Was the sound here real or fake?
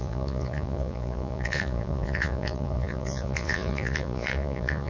fake